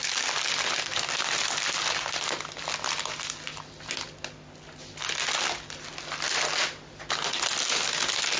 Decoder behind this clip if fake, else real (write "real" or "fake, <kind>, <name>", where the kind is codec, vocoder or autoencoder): real